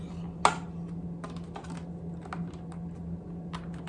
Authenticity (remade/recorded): recorded